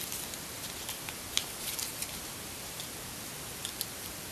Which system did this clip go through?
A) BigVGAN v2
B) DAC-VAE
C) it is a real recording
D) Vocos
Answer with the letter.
C